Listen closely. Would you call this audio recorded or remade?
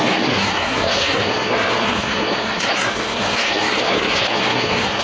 remade